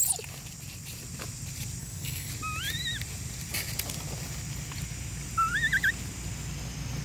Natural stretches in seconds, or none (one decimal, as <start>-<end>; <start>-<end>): 0.0-1.8; 2.3-7.0